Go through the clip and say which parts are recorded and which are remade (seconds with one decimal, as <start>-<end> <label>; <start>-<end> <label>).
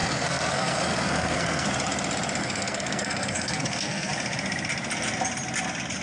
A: 0.0-1.7 remade; 1.7-2.4 recorded; 2.4-4.1 remade; 4.1-6.0 recorded